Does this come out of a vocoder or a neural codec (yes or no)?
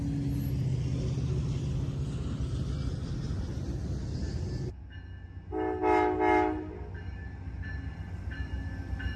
no